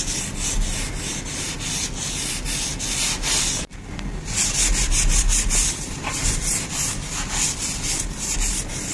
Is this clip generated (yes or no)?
no